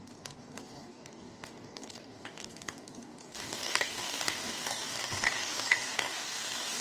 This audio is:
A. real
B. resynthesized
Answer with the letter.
B